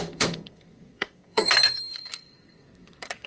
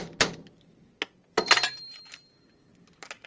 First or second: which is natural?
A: second